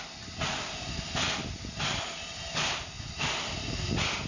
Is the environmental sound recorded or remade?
recorded